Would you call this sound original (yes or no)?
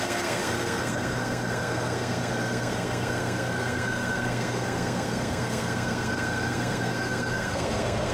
no